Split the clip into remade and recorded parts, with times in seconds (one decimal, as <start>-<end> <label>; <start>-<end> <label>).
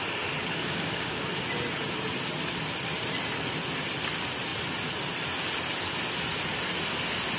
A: 0.0-0.4 recorded; 0.4-1.4 remade; 1.4-7.4 recorded